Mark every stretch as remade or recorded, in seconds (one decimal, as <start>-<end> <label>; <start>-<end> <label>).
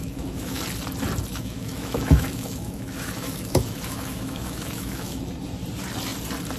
0.0-0.6 remade; 0.6-1.3 recorded; 1.3-5.3 remade; 5.3-6.6 recorded